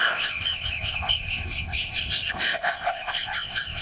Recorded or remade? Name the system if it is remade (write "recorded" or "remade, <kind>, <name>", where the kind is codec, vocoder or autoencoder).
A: remade, codec, ZipCodec